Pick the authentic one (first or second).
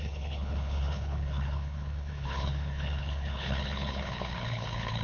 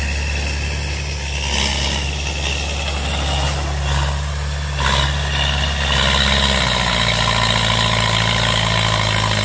second